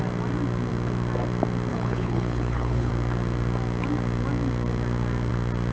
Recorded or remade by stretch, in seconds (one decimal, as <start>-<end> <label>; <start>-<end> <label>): 0.0-1.7 recorded; 1.7-2.9 remade; 2.9-5.7 recorded